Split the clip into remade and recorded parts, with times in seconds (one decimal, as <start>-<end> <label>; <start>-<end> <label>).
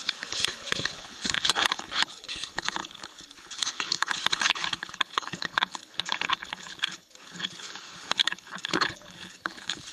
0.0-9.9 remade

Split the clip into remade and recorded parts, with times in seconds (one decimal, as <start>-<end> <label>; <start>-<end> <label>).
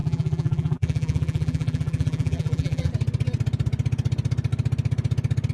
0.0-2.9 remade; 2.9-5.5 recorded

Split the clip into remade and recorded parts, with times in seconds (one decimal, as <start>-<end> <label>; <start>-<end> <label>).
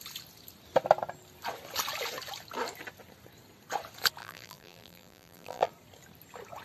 0.0-4.2 recorded; 4.2-5.7 remade; 5.7-6.6 recorded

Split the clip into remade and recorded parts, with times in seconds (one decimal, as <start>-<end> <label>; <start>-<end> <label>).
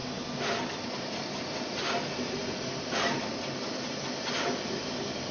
0.0-5.3 recorded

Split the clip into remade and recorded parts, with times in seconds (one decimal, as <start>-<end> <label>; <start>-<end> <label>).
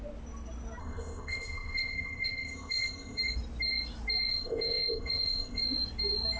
0.0-0.8 recorded; 0.8-3.2 remade; 3.2-4.3 recorded; 4.3-5.6 remade; 5.6-6.4 recorded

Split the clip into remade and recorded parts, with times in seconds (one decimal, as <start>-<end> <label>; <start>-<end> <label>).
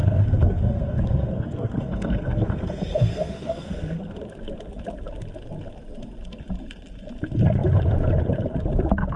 0.0-4.2 remade; 4.2-9.2 recorded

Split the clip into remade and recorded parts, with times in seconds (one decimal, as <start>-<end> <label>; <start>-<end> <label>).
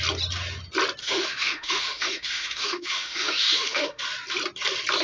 0.0-1.0 recorded; 1.0-4.0 remade; 4.0-5.0 recorded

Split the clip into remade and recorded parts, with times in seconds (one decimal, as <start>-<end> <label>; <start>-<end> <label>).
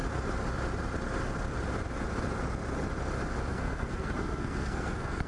0.0-3.5 recorded; 3.5-5.3 remade